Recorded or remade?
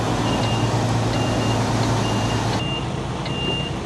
recorded